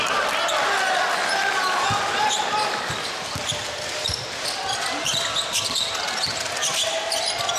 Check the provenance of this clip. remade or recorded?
recorded